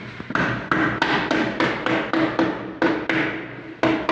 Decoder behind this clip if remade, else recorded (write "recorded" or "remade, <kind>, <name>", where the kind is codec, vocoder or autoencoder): recorded